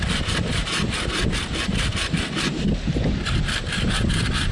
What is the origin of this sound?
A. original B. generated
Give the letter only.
A